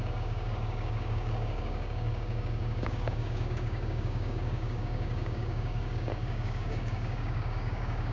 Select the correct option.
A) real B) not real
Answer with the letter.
B